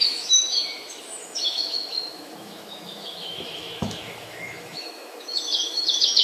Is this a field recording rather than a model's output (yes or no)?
no